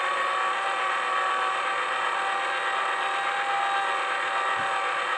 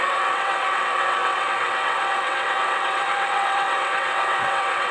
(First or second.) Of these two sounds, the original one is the first